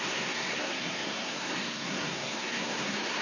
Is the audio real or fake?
fake